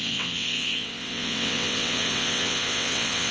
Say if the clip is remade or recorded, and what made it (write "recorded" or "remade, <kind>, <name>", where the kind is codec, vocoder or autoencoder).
remade, vocoder, WaveNeXt